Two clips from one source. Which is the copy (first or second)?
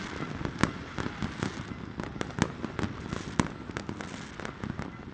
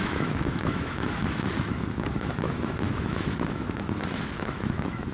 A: second